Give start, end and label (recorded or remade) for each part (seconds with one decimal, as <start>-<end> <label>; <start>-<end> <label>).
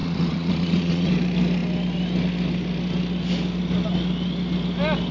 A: 0.0-1.1 remade; 1.1-5.1 recorded